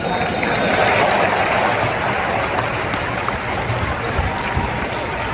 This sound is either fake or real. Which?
real